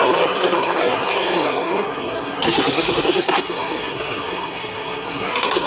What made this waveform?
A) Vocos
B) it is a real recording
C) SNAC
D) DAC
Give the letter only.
C